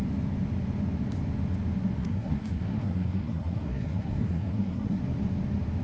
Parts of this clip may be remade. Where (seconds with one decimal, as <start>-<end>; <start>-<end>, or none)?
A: 2.0-5.0